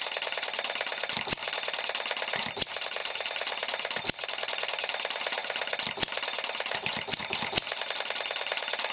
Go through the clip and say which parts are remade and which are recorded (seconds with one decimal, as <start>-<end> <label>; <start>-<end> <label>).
0.0-5.4 remade; 5.4-6.1 recorded; 6.1-7.2 remade; 7.2-7.9 recorded; 7.9-8.9 remade